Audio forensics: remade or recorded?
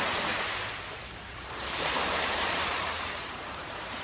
remade